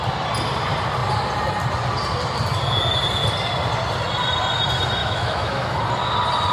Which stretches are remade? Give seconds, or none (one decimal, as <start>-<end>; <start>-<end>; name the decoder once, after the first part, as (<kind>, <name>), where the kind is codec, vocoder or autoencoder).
5.0-5.8 (autoencoder, DAC-VAE)